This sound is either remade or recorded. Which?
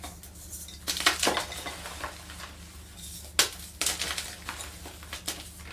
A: recorded